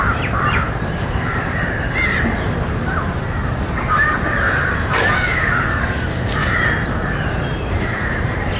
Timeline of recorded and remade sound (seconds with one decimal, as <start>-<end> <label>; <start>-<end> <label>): 0.0-8.6 remade